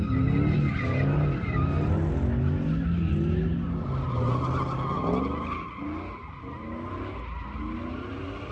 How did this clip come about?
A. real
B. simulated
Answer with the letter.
A